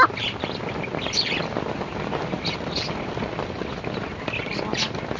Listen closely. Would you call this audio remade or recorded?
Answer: recorded